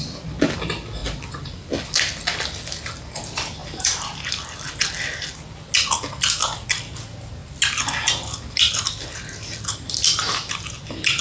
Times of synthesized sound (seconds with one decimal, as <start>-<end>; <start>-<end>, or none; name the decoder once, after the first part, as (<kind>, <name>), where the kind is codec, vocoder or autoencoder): 3.6-4.3 (vocoder, BigVGAN v2)